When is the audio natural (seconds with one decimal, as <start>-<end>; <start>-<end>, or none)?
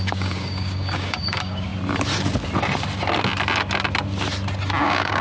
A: 1.7-4.8